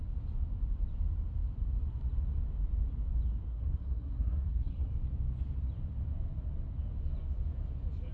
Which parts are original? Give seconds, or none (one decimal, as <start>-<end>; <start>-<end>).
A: 0.0-3.5; 4.9-8.1